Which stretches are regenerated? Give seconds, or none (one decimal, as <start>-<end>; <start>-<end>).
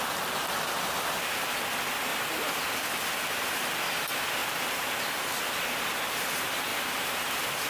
2.1-2.6; 4.4-5.0; 6.7-7.7